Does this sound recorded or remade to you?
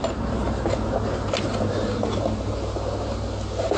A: recorded